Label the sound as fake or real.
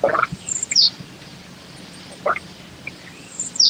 real